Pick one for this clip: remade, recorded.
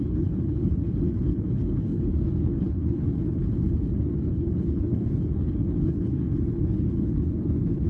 remade